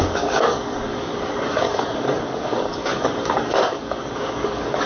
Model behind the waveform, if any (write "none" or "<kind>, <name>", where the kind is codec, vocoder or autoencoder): codec, DAC